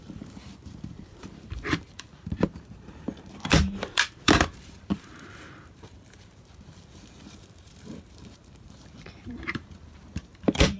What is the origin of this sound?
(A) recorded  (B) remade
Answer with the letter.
B